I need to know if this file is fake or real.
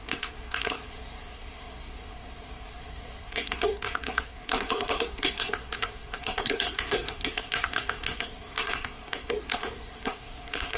fake